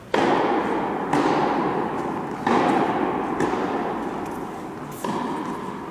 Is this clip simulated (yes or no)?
no